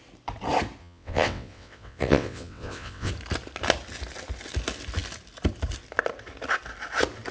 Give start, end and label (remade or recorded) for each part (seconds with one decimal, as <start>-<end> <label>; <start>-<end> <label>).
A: 0.0-0.8 recorded; 0.8-3.1 remade; 3.1-7.3 recorded